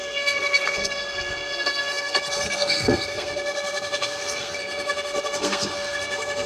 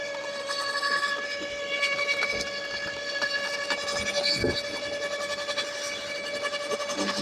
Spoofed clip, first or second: first